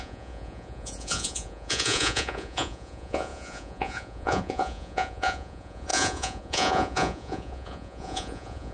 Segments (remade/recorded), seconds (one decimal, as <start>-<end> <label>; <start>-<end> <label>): 0.0-8.7 remade

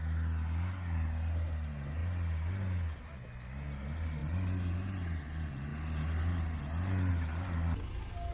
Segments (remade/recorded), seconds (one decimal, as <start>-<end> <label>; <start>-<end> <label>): 0.0-8.3 recorded

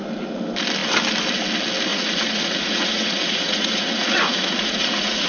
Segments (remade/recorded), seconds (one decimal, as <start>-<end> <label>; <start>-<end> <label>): 0.0-1.9 recorded; 1.9-5.3 remade

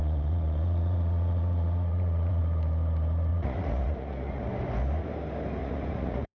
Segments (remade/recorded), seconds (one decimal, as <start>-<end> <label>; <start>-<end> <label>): 0.0-2.4 remade; 2.4-3.3 recorded; 3.3-4.5 remade; 4.5-5.6 recorded; 5.6-6.4 remade

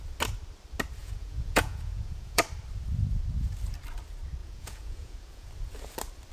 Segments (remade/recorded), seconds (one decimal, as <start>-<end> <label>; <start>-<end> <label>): 0.0-1.0 recorded; 1.0-2.4 remade; 2.4-4.4 recorded; 4.4-5.5 remade; 5.5-6.3 recorded

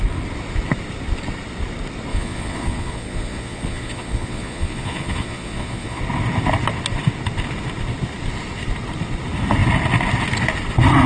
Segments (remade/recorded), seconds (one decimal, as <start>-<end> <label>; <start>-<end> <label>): 0.0-2.1 recorded; 2.1-6.0 remade; 6.0-11.1 recorded